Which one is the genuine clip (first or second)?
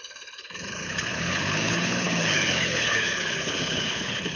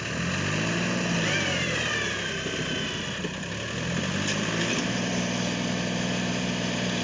second